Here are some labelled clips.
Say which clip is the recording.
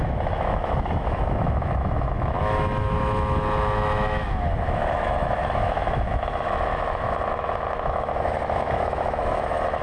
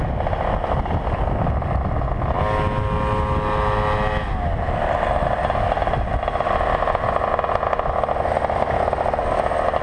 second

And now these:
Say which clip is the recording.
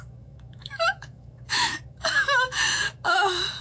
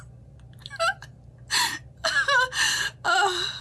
second